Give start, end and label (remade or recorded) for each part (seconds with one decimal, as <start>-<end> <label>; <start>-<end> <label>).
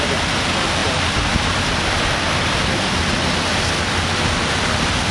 0.0-0.8 recorded; 0.8-3.9 remade; 3.9-5.1 recorded